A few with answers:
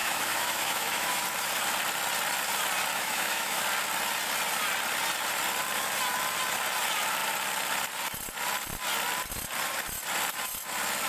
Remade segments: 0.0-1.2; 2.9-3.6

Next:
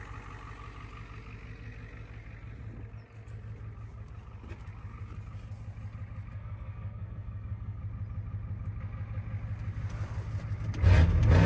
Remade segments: 6.3-7.8

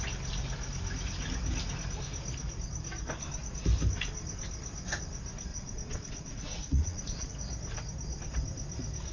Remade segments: 5.5-7.3

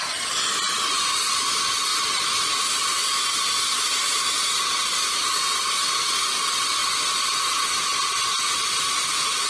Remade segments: 1.9-3.0; 4.0-5.7

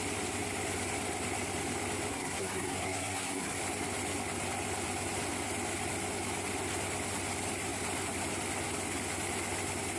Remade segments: 2.1-3.6

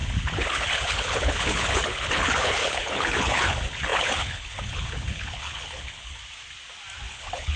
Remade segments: 0.0-6.2; 7.1-7.6

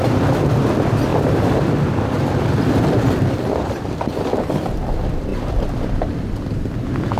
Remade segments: 0.0-5.3